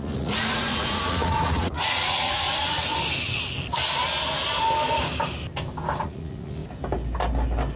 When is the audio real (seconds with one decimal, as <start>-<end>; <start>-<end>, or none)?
2.9-6.0; 6.6-7.8